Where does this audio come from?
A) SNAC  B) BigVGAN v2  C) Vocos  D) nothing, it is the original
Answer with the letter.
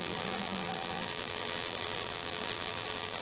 B